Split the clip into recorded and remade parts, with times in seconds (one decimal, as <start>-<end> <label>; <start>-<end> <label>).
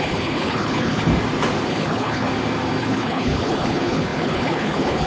0.0-1.1 remade; 1.1-1.7 recorded; 1.7-2.3 remade; 2.3-2.8 recorded; 2.8-5.1 remade